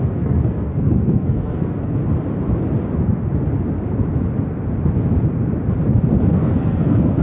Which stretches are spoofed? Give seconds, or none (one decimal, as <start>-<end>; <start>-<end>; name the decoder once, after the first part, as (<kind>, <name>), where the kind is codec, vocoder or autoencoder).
0.0-2.0 (codec, SNAC); 6.3-7.2